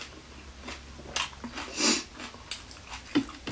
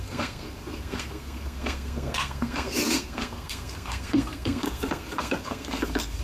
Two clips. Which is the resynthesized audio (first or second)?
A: second